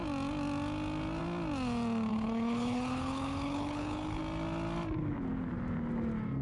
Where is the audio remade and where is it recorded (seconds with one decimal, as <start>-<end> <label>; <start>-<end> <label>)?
0.0-2.1 recorded; 2.1-4.2 remade; 4.2-6.4 recorded